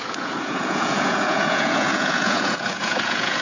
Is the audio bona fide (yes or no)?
no